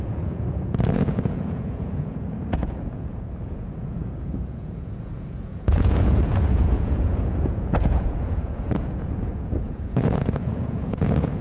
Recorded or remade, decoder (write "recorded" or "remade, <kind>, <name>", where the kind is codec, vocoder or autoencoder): remade, vocoder, Vocos